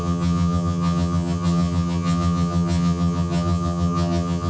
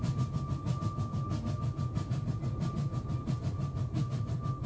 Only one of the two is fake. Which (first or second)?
first